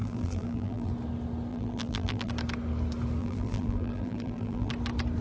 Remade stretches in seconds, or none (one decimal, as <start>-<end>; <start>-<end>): 0.0-0.9; 1.5-2.3; 3.2-4.7